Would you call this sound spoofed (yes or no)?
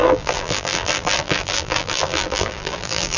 yes